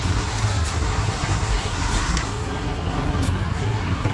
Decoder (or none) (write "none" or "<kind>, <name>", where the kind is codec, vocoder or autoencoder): codec, SNAC